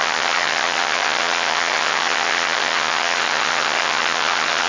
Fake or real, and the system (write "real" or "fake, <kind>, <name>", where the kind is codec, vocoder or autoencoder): fake, vocoder, HiFi-GAN